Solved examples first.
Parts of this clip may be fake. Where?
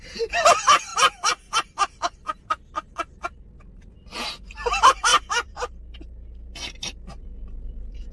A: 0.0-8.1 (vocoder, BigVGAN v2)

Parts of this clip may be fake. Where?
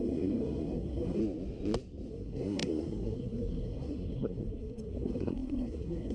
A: 0.0-1.2 (codec, SNAC); 2.1-6.1